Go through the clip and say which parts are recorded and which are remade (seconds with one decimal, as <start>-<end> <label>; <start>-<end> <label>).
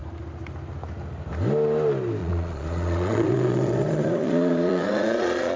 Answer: 0.0-2.2 recorded; 2.2-5.6 remade